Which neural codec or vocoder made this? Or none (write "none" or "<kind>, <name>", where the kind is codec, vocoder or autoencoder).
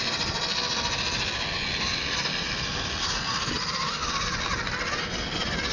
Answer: none